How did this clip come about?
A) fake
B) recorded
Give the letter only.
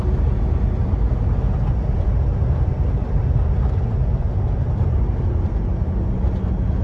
B